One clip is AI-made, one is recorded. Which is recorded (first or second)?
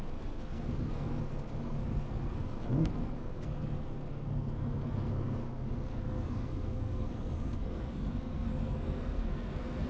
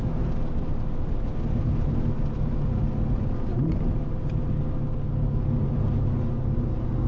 second